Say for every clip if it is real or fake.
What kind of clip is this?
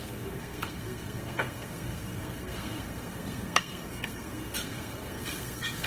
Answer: fake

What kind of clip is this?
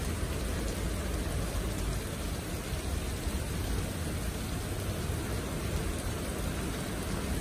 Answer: real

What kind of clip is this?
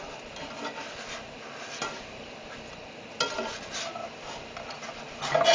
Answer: real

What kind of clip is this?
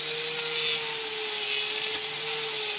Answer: real